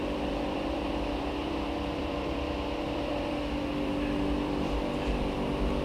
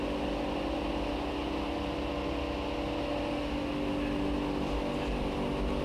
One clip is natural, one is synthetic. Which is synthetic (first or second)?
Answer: first